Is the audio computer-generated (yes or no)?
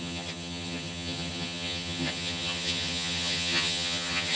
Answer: yes